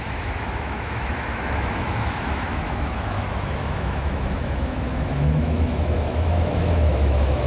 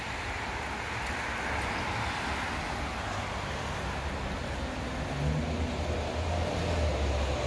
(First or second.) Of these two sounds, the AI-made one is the first